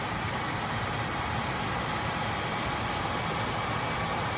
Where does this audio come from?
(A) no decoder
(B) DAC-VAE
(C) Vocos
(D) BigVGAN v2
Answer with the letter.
A